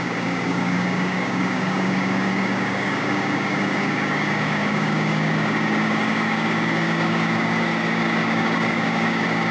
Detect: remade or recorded remade